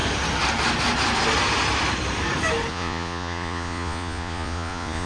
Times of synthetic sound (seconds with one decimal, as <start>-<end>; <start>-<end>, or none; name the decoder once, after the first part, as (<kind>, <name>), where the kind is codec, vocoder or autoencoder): 2.7-5.1 (vocoder, Vocos)